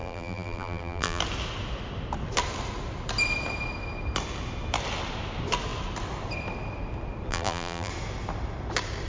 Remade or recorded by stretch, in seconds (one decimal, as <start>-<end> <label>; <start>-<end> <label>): 0.0-1.2 remade; 1.2-7.3 recorded; 7.3-7.9 remade; 7.9-9.1 recorded